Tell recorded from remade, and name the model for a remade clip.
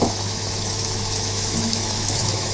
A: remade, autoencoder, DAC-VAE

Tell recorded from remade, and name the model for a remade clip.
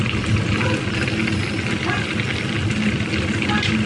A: recorded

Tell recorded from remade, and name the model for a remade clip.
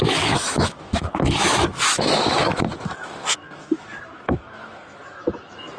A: remade, autoencoder, DAC-VAE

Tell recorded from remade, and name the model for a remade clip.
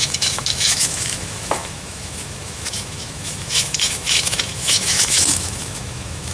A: remade, autoencoder, DAC-VAE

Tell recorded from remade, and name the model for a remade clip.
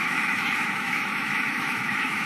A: remade, autoencoder, DAC-VAE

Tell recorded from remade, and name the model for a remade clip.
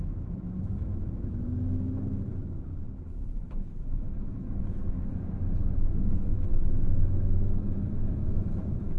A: remade, autoencoder, DAC-VAE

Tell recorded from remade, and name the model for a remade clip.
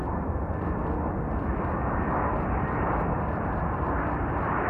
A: recorded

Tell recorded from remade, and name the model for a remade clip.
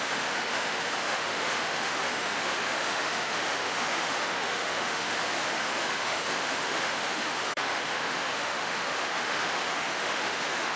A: remade, autoencoder, DAC-VAE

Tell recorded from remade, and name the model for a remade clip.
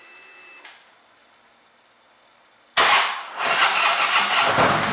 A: recorded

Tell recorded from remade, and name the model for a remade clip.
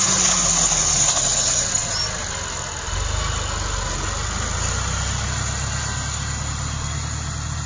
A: recorded